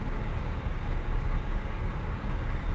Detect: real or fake fake